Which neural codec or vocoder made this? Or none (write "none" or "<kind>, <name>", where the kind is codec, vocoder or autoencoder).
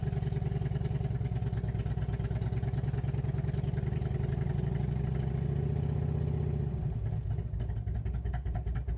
none